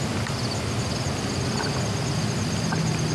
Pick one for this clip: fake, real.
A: real